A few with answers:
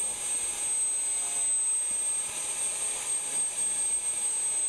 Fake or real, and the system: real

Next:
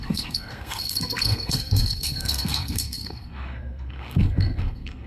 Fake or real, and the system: fake, codec, SNAC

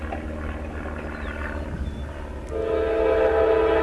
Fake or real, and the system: real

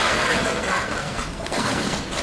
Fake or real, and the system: fake, codec, SNAC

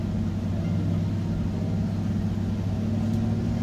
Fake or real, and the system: real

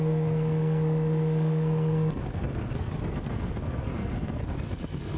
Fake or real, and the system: fake, codec, SNAC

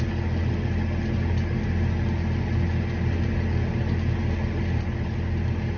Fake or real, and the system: real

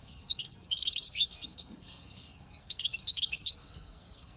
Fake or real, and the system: fake, codec, SNAC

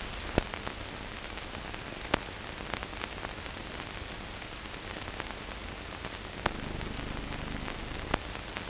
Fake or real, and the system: real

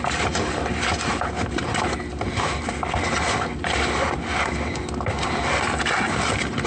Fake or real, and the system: real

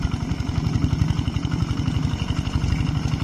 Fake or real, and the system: real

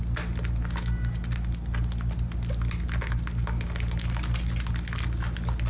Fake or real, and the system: real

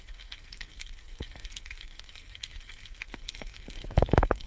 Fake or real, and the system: fake, codec, SNAC